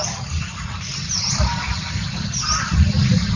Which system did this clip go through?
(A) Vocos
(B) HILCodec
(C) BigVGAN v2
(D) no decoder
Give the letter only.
D